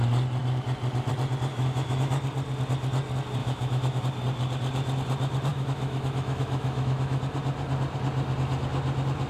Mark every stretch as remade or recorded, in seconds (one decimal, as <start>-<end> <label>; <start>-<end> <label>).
0.0-1.5 recorded; 1.5-2.1 remade; 2.1-3.4 recorded; 3.4-4.0 remade; 4.0-5.5 recorded; 5.5-7.2 remade; 7.2-9.3 recorded